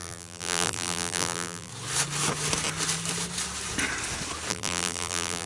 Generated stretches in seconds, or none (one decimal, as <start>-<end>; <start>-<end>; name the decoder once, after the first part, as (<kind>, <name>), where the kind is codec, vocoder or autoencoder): 0.0-1.7 (vocoder, BigVGAN v2); 4.5-5.5